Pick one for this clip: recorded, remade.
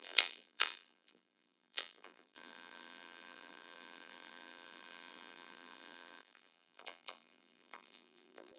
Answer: remade